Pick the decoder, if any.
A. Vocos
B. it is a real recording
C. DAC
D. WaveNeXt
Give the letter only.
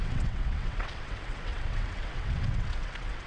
D